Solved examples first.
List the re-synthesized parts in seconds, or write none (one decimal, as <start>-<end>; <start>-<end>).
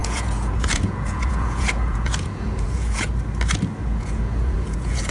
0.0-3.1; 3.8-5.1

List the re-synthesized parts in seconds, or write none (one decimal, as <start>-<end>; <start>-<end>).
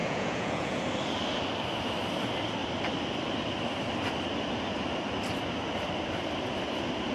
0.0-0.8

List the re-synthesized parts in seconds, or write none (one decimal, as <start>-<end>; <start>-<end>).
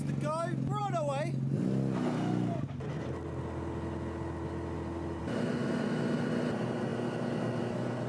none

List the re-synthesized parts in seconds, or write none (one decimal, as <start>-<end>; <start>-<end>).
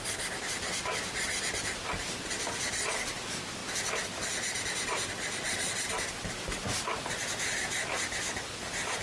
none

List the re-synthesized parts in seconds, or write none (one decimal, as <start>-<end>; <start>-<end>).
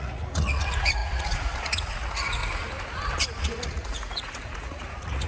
0.0-2.4; 3.4-5.3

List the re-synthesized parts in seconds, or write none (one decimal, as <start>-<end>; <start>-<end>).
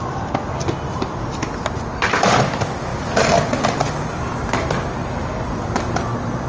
none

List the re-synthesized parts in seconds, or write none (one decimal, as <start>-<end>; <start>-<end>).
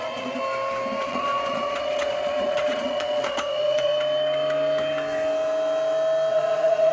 0.0-0.4; 1.0-3.9; 6.3-6.9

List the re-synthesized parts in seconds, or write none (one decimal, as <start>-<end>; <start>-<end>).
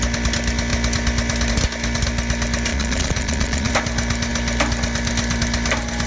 2.7-3.7